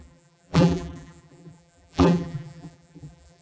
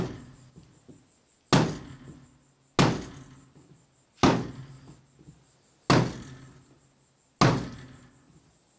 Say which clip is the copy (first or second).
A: first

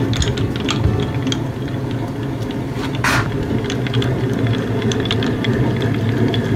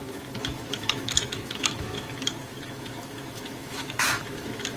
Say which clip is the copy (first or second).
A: second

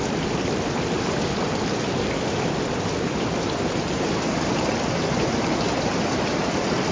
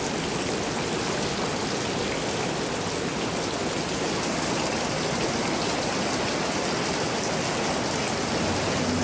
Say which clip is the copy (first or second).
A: first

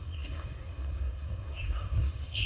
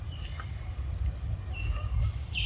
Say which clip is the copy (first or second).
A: first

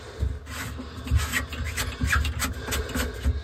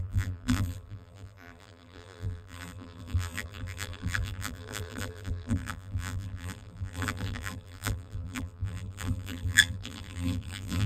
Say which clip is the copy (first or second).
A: second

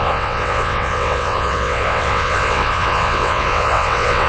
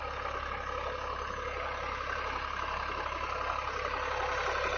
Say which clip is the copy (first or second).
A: first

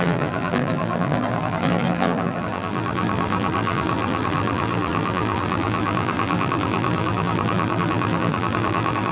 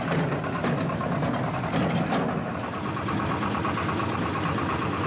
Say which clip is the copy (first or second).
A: first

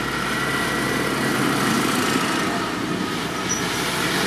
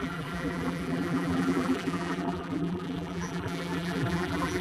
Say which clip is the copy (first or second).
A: second